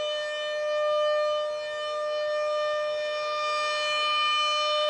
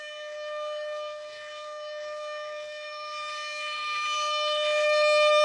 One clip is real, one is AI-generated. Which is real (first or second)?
first